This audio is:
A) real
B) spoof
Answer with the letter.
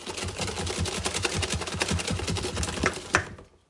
A